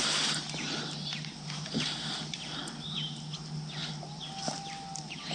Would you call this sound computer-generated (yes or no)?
no